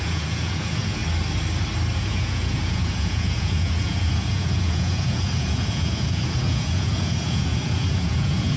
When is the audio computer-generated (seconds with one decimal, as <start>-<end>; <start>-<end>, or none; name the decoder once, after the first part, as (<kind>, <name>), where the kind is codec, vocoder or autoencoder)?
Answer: 0.0-1.0 (vocoder, Vocos); 2.0-8.6